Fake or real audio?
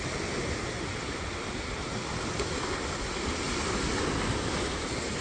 real